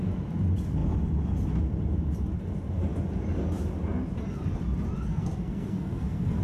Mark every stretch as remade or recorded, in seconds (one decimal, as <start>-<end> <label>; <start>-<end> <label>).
0.0-5.1 recorded; 5.1-6.4 remade

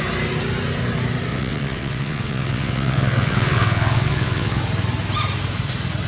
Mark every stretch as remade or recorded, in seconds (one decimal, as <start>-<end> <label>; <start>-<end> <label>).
0.0-1.3 recorded; 1.3-4.6 remade; 4.6-6.1 recorded

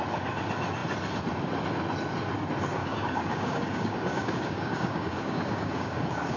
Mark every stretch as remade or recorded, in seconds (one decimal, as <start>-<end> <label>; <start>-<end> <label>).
0.0-2.8 recorded; 2.8-6.4 remade

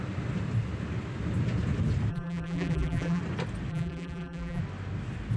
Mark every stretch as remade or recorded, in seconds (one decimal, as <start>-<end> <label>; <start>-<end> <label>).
0.0-2.1 recorded; 2.1-3.2 remade; 3.2-3.7 recorded; 3.7-4.6 remade; 4.6-5.4 recorded

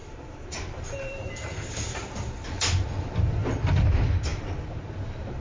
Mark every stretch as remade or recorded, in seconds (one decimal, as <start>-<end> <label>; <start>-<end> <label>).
0.0-2.6 remade; 2.6-5.4 recorded